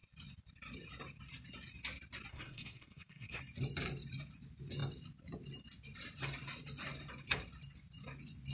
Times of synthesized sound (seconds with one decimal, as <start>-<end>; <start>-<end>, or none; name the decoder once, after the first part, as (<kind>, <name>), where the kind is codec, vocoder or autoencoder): 2.3-3.4 (codec, SNAC)

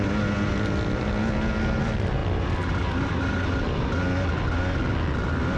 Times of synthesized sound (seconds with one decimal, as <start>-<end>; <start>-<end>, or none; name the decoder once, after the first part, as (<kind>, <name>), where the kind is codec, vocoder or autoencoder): none